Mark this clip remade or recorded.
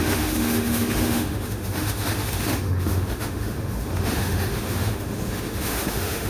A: remade